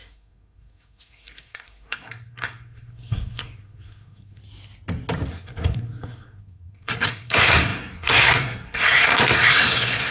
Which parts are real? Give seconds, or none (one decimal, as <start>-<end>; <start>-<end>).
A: 4.4-5.3